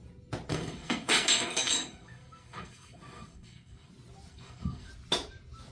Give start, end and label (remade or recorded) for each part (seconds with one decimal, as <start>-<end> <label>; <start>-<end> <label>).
0.0-0.5 recorded; 0.5-3.9 remade; 3.9-4.3 recorded; 4.3-4.9 remade; 4.9-5.7 recorded